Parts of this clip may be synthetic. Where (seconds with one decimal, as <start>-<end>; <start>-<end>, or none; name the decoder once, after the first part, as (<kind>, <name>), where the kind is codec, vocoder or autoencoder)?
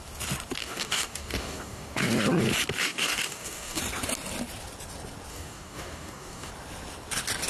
0.6-2.0 (codec, DAC); 2.8-3.8; 5.3-6.5